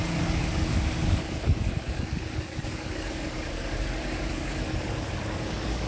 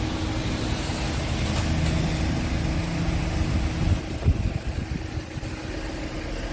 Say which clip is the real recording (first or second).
second